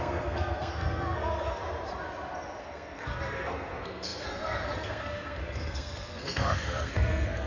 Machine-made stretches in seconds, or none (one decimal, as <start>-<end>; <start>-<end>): 0.0-1.6; 2.6-7.5